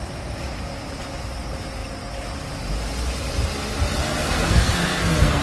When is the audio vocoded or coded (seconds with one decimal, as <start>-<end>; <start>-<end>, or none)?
4.0-5.4